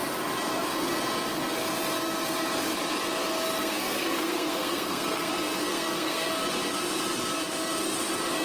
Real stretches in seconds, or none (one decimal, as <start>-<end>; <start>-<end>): 0.0-3.6; 5.3-5.7; 6.3-8.4